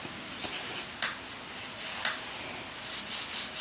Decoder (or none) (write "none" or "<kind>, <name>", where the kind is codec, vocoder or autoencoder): none